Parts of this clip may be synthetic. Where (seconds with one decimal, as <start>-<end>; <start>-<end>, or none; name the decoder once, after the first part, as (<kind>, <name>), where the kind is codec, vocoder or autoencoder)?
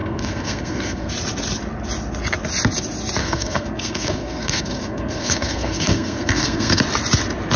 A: 0.0-1.1 (codec, SNAC); 3.2-6.8